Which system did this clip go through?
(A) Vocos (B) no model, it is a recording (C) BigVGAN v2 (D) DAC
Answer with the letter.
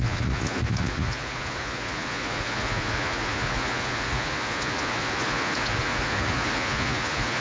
A